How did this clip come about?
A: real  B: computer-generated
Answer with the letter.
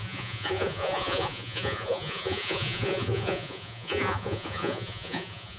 B